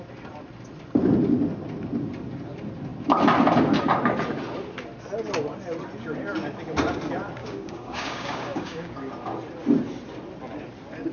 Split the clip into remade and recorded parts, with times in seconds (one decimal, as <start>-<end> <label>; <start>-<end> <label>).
0.0-7.4 recorded; 7.4-9.1 remade; 9.1-11.1 recorded